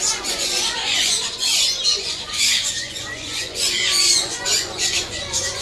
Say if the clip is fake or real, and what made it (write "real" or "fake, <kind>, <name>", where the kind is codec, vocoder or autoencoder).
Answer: fake, vocoder, Vocos